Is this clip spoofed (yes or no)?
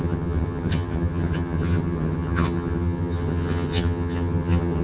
yes